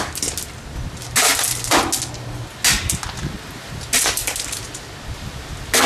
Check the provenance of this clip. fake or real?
real